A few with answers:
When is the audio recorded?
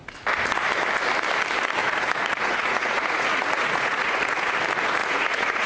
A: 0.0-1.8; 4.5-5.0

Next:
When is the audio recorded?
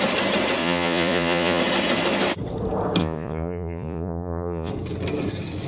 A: 0.0-0.6; 1.6-3.0; 4.7-5.7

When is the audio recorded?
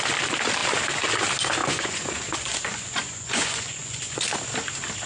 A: 0.0-1.6; 4.3-5.1